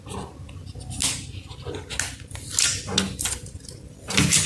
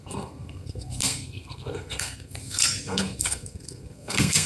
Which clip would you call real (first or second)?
first